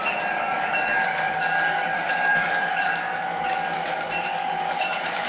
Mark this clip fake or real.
fake